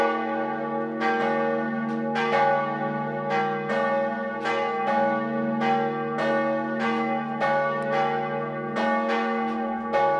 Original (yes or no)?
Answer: yes